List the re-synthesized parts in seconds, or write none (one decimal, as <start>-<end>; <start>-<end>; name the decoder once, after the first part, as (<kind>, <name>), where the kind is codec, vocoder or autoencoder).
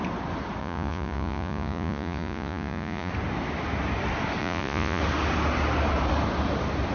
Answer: 0.6-3.1 (vocoder, Vocos); 4.4-5.0